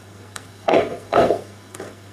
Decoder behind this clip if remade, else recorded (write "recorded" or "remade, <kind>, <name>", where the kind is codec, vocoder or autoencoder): remade, codec, SNAC